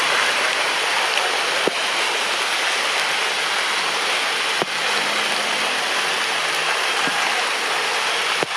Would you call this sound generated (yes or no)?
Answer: no